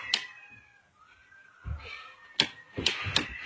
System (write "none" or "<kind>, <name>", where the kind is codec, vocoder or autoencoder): none